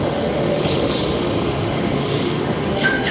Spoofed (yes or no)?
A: yes